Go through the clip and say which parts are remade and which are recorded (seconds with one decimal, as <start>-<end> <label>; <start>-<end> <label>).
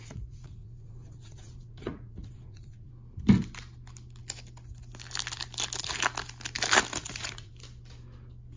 0.0-2.9 remade; 2.9-7.0 recorded; 7.0-7.5 remade; 7.5-8.6 recorded